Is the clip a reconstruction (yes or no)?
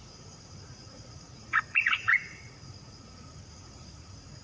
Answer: yes